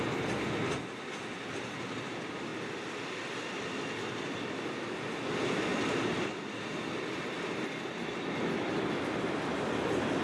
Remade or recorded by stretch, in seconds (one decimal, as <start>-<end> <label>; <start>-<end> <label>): 0.0-10.2 recorded